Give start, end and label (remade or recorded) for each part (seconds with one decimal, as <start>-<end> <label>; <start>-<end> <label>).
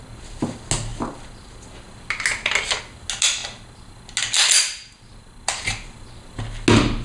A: 0.0-7.0 recorded